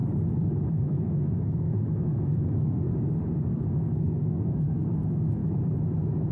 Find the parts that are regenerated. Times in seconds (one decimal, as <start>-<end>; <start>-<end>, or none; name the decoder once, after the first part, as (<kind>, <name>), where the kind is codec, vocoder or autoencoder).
0.7-2.9 (codec, SNAC); 3.6-5.4